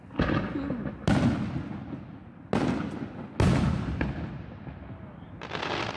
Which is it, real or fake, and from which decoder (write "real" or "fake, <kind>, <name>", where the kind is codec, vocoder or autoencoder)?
real